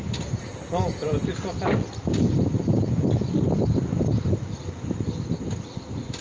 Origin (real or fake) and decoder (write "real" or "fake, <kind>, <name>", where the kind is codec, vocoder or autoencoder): real